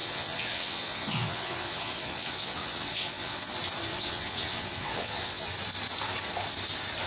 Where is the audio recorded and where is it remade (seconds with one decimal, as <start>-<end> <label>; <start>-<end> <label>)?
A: 0.0-3.4 remade; 3.4-3.9 recorded; 3.9-5.5 remade; 5.5-7.1 recorded